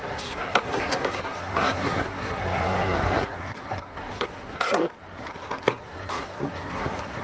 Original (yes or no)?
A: no